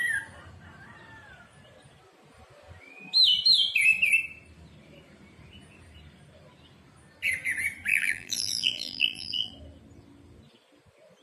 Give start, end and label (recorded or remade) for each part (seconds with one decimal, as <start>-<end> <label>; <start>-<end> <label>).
0.0-7.9 recorded; 7.9-9.5 remade; 9.5-11.2 recorded